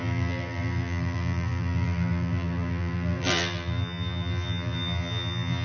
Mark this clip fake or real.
fake